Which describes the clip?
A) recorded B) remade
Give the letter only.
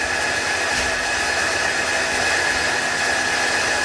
A